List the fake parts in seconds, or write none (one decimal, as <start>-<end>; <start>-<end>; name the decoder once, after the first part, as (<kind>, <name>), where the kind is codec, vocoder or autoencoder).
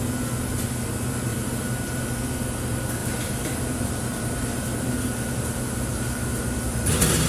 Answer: 1.3-2.0 (vocoder, BigVGAN v2); 3.0-7.3